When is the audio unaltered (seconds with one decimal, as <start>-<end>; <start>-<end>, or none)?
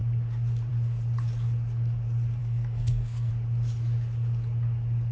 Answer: 0.0-2.4; 3.3-5.1